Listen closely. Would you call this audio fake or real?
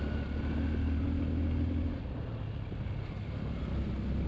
real